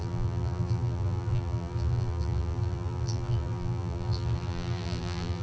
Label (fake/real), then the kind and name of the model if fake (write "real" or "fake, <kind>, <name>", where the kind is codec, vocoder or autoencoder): fake, vocoder, BigVGAN v2